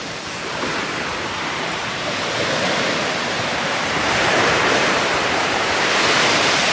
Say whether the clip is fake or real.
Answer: fake